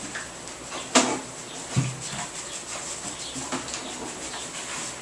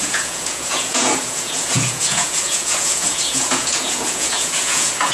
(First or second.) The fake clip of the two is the second